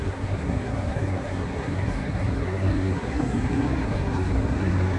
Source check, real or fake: fake